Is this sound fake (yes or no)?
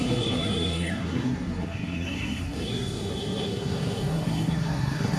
yes